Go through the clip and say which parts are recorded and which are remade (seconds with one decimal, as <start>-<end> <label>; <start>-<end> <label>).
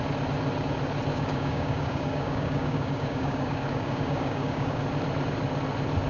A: 0.0-1.1 recorded; 1.1-4.8 remade; 4.8-6.1 recorded